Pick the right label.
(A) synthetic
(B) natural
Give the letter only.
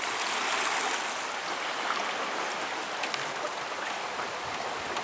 B